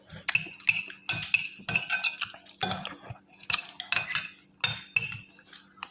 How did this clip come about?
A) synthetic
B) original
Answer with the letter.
B